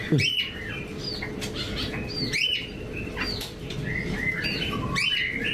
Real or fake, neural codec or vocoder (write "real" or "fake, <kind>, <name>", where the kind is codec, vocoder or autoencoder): fake, vocoder, BigVGAN v2